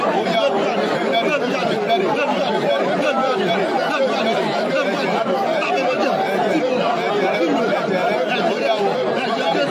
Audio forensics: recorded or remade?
recorded